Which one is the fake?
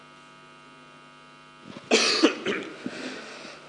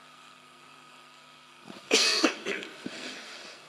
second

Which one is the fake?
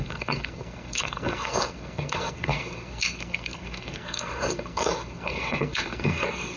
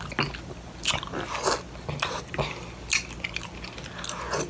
first